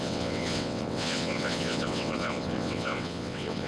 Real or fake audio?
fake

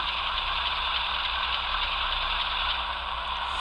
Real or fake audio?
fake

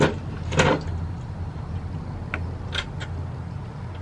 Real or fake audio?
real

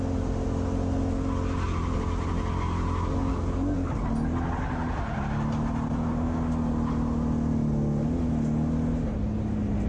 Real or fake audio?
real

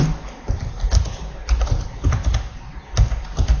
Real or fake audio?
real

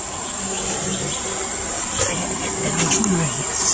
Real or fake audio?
real